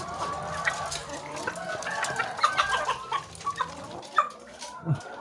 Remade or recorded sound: recorded